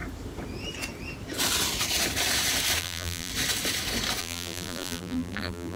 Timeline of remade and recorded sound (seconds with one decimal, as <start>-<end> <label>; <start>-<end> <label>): 0.0-2.8 recorded; 2.8-3.3 remade; 3.3-4.2 recorded; 4.2-5.8 remade